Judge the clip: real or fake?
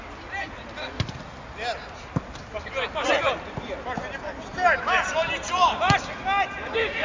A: real